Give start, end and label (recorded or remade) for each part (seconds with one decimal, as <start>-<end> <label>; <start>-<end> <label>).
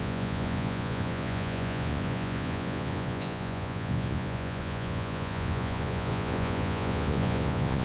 0.0-7.8 remade